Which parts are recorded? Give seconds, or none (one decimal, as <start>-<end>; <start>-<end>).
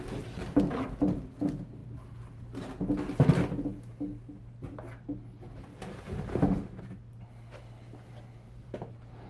0.0-6.3; 6.8-9.3